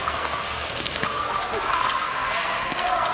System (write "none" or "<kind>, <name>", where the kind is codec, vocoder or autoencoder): codec, SNAC